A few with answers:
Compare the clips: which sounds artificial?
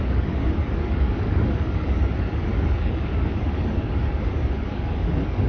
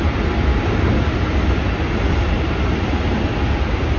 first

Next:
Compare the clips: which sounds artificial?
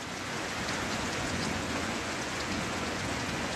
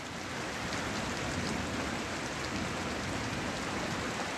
first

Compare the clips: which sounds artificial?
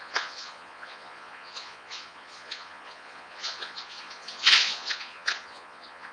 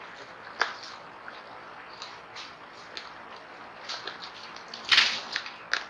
first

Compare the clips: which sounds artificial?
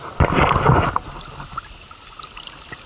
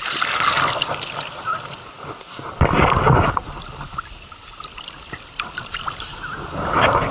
second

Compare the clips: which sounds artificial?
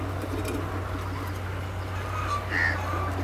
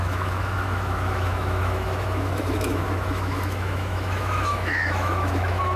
second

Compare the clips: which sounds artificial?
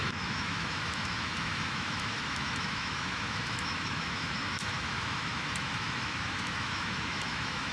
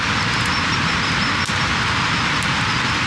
first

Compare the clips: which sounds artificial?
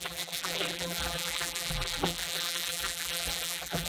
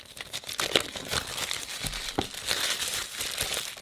first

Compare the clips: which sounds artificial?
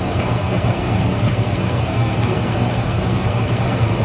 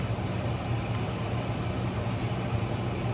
first